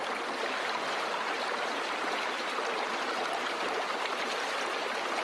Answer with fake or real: real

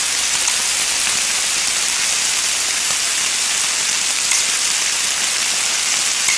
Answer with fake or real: real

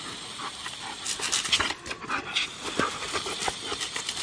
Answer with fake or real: real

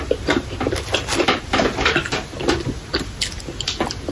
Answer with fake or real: real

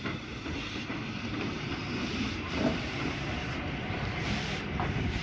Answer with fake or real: fake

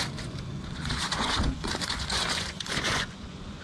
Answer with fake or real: fake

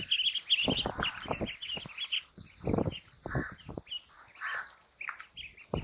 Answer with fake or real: real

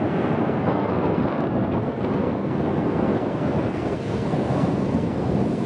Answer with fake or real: fake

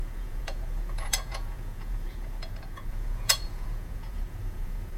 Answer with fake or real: fake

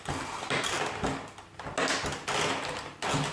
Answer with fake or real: real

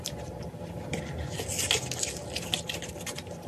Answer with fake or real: real